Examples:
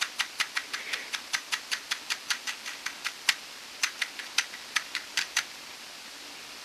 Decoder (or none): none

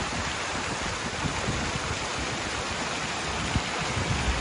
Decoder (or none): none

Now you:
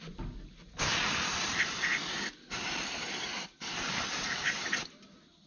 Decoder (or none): vocoder, BigVGAN v2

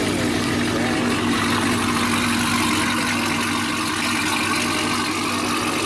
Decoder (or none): none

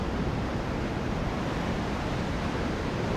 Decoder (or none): none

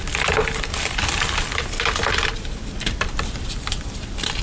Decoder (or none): vocoder, BigVGAN v2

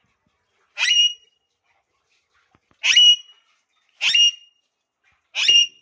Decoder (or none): none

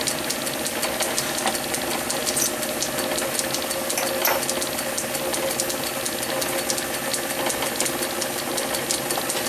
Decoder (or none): none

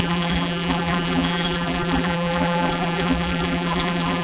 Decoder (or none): vocoder, BigVGAN v2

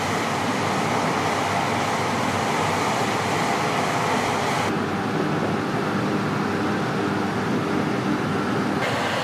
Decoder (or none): none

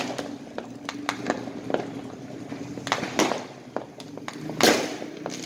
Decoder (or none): none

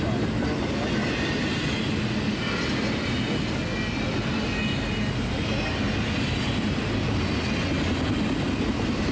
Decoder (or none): none